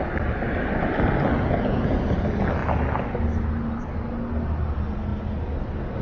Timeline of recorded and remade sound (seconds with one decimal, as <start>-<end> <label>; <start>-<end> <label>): 0.0-6.0 recorded